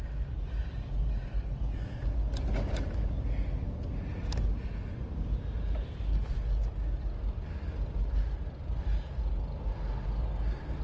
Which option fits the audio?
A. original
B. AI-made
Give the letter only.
A